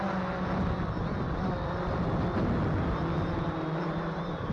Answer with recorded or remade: recorded